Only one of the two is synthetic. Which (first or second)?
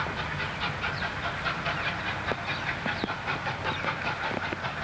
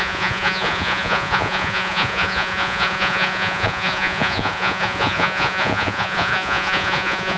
second